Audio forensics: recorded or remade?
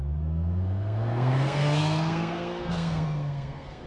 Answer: remade